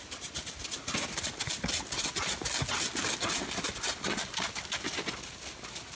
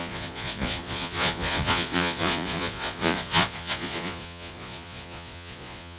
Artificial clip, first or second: second